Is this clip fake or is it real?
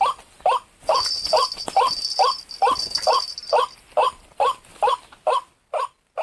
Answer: real